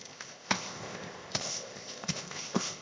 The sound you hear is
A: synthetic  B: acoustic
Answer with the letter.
A